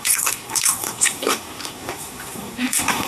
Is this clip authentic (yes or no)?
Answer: no